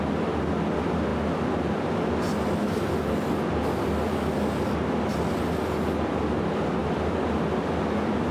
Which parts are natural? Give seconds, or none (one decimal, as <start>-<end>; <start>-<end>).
0.0-8.3